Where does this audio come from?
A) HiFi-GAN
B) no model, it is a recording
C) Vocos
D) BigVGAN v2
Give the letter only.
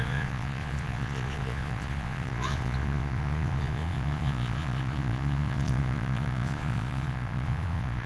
C